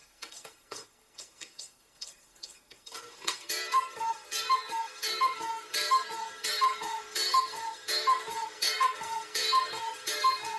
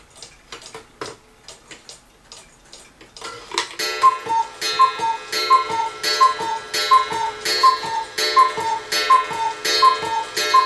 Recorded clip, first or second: second